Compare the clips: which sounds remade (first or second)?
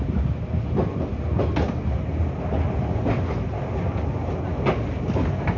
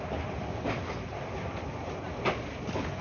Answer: second